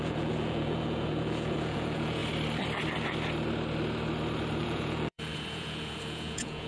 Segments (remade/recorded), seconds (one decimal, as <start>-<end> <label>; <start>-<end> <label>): 0.0-2.2 remade; 2.2-4.6 recorded; 4.6-6.7 remade